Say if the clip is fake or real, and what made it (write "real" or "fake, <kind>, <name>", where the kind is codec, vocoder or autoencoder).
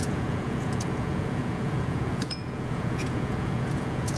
fake, vocoder, Vocos